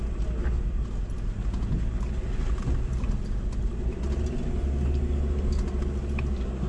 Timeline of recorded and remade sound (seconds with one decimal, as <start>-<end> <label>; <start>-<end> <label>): 0.0-6.7 recorded